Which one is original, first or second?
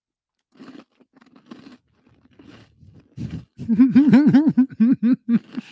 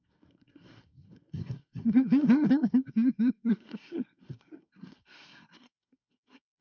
first